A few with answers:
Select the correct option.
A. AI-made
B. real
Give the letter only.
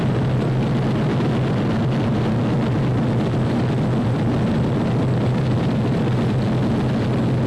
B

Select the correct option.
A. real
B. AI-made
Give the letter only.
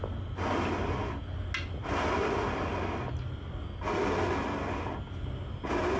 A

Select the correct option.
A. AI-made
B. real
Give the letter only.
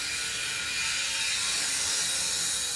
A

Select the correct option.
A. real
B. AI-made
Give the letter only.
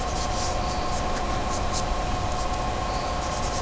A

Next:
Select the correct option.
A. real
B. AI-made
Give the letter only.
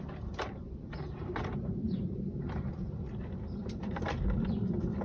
B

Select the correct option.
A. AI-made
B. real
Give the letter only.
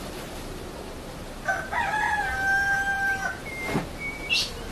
A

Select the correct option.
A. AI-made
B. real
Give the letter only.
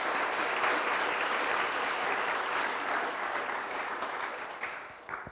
A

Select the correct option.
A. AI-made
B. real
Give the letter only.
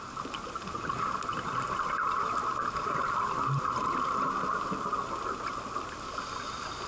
A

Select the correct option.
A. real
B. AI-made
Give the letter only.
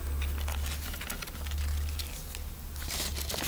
A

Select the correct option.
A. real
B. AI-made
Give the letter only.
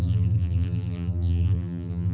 B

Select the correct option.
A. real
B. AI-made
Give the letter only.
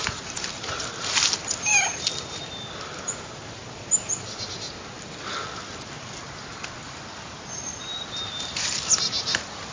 B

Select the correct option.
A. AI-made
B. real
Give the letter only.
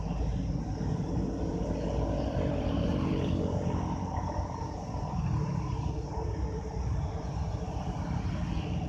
A